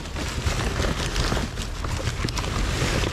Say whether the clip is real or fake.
real